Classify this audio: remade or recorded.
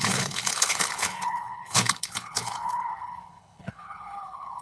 remade